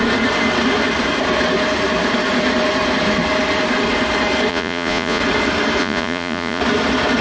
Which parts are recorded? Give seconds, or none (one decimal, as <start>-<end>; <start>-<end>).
0.0-4.5; 5.2-5.8; 6.6-7.2

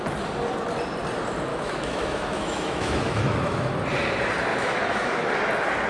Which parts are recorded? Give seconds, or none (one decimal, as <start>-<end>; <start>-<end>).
0.0-1.5; 3.7-4.5; 5.3-5.9

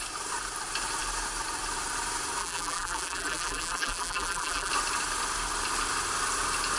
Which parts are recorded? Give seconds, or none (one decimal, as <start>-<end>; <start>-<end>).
0.0-2.4; 4.7-6.8